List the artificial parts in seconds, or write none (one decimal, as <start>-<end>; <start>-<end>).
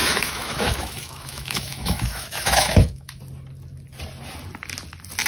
0.0-3.2